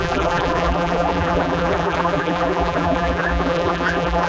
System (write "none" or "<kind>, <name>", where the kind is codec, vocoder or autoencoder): vocoder, BigVGAN v2